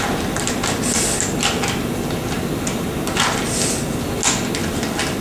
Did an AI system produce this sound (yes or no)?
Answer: no